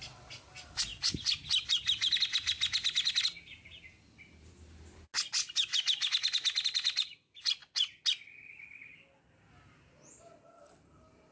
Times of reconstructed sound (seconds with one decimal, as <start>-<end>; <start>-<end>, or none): none